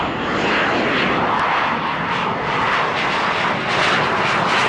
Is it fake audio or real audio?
real